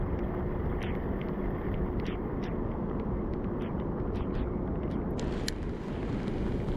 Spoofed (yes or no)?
no